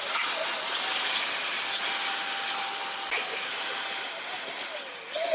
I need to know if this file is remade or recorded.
recorded